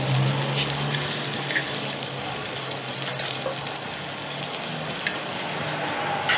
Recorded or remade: recorded